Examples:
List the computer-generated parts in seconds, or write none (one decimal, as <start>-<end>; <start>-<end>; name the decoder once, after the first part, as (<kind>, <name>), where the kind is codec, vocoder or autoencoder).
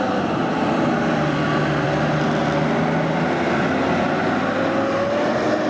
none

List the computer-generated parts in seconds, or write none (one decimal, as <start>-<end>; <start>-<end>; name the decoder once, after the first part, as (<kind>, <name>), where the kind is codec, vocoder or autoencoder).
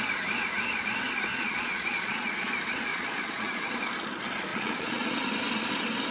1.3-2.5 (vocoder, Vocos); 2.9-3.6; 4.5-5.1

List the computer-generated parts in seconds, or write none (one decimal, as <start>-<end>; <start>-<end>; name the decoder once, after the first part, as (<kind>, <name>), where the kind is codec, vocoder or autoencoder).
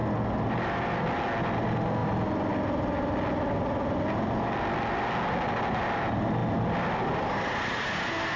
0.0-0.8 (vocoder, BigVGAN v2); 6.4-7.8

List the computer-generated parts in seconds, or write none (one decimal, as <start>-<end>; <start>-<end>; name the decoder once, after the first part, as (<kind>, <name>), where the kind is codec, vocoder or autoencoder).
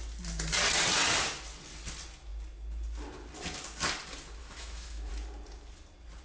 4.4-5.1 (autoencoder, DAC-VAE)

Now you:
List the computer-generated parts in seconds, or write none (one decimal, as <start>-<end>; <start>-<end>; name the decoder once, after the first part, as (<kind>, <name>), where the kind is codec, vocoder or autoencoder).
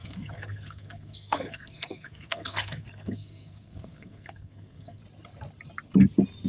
0.0-5.0 (codec, SNAC)